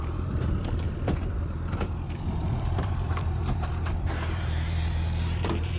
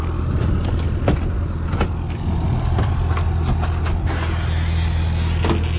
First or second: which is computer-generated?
first